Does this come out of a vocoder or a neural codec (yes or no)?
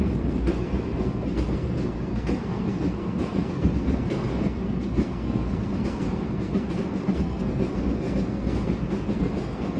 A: yes